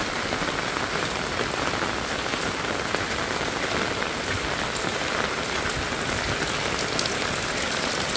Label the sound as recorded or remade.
recorded